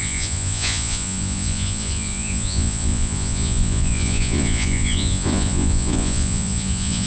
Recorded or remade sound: remade